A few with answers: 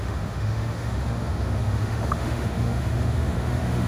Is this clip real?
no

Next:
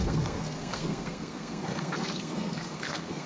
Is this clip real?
no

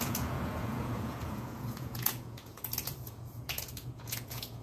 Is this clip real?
no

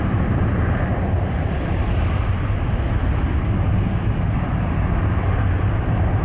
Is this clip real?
yes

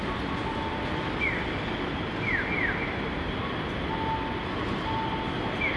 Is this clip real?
yes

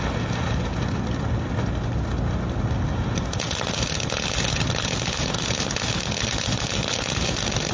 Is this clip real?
yes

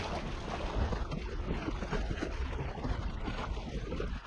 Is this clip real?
yes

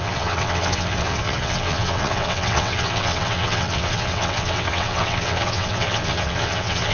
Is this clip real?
no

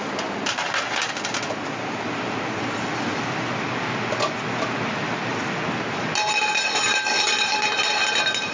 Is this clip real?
yes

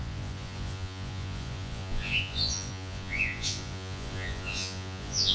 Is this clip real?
no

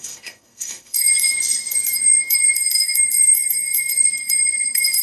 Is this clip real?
no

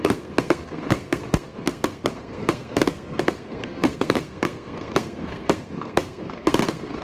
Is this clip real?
no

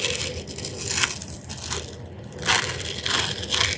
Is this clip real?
yes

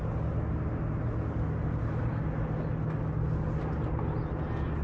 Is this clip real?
yes